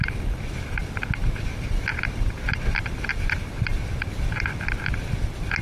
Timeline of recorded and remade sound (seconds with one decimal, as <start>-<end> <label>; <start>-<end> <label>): 0.0-5.6 recorded